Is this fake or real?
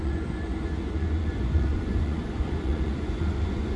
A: fake